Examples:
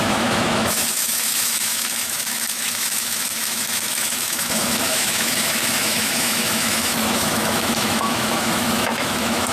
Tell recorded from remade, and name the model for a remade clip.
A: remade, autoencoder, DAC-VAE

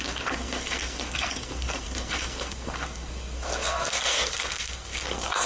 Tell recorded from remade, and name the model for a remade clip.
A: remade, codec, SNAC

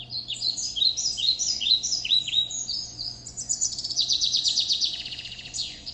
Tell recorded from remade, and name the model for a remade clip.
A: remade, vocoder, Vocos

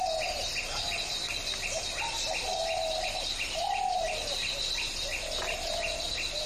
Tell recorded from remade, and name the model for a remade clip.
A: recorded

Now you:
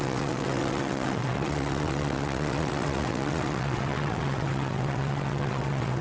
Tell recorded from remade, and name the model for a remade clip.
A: remade, vocoder, WaveNeXt